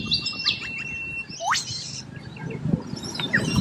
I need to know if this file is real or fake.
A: real